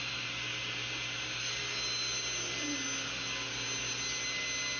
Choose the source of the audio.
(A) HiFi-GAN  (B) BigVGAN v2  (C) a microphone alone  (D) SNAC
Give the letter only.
C